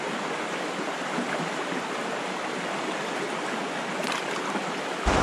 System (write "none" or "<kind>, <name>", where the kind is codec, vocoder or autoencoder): none